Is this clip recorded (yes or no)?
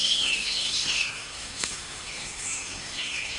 no